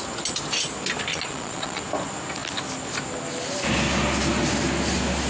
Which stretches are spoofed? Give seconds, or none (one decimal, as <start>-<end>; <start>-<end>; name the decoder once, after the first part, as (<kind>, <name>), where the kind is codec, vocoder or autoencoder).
1.1-1.8 (vocoder, Vocos)